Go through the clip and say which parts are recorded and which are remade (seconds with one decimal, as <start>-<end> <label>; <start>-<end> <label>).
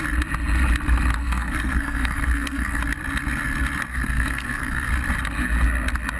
0.0-1.2 recorded; 1.2-2.8 remade; 2.8-3.9 recorded; 3.9-4.9 remade; 4.9-6.2 recorded